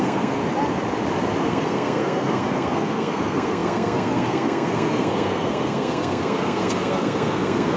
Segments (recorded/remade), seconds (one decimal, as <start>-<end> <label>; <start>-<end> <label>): 0.0-0.4 remade; 0.4-1.4 recorded; 1.4-7.8 remade